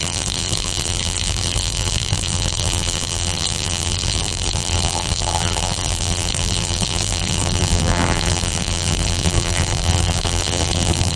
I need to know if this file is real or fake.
fake